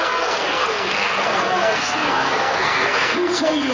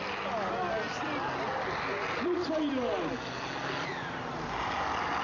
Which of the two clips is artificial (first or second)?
first